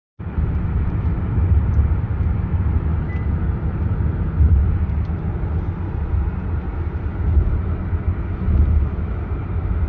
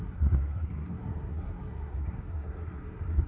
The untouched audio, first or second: first